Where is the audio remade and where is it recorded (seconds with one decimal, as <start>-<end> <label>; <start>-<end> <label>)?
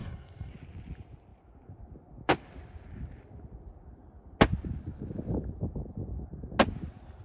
0.0-0.5 remade; 0.5-7.2 recorded